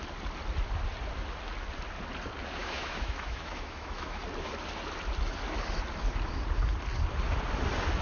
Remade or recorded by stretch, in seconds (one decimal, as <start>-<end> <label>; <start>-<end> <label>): 0.0-2.6 recorded; 2.6-4.2 remade; 4.2-8.0 recorded